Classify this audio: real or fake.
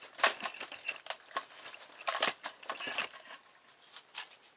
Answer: fake